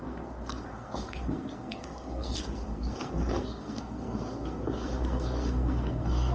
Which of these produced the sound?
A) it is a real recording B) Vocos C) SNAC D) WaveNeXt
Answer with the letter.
C